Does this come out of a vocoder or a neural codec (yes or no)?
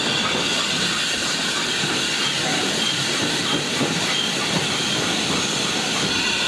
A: no